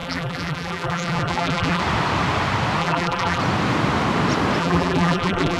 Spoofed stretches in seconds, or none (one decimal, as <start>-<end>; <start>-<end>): 0.0-1.8; 2.8-3.4; 4.6-5.6